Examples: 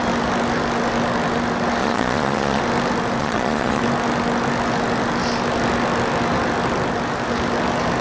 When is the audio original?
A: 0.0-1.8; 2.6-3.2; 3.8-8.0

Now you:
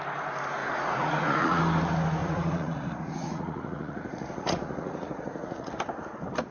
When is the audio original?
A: 0.0-0.6; 1.6-2.2; 5.7-6.5